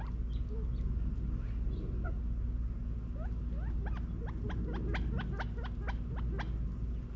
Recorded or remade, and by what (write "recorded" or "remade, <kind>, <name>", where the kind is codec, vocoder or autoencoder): recorded